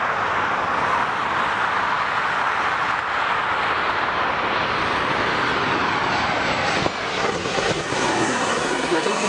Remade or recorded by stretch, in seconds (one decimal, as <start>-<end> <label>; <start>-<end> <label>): 0.0-7.1 recorded; 7.1-9.3 remade